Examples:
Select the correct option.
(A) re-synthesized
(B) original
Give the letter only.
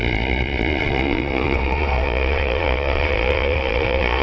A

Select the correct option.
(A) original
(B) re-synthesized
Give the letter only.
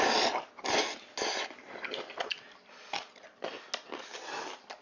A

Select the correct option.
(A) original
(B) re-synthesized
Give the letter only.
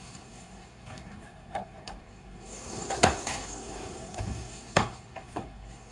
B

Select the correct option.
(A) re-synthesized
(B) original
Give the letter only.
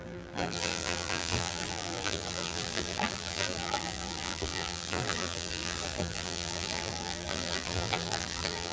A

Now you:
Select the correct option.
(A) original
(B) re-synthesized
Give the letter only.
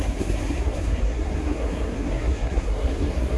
B